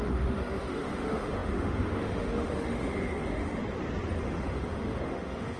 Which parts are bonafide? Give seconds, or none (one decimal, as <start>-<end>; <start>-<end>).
3.6-4.2